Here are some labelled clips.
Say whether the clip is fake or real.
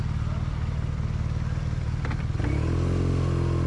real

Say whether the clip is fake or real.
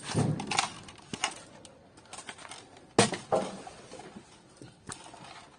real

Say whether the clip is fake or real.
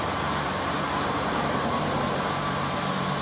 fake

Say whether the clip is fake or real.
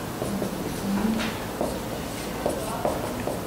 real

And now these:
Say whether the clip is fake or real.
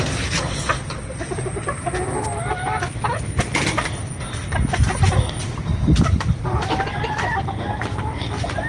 real